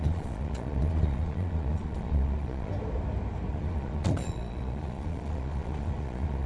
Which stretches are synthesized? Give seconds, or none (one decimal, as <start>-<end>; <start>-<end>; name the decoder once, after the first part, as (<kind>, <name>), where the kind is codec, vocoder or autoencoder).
0.0-2.7 (vocoder, Vocos); 3.5-6.5